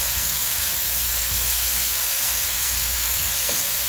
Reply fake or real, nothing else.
fake